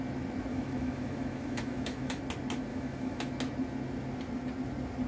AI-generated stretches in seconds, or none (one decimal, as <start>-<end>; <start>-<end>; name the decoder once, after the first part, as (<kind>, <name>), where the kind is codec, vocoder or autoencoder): 0.5-2.2 (autoencoder, DAC-VAE); 2.7-3.3